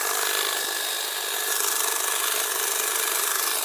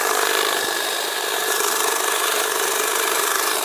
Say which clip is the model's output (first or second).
second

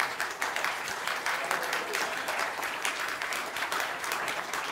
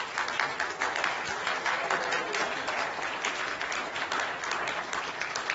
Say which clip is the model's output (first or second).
first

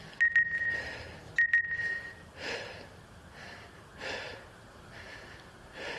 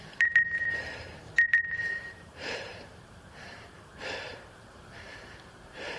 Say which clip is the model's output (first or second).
second